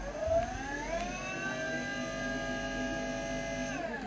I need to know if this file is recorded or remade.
recorded